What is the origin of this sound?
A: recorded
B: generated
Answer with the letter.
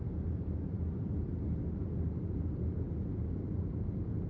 A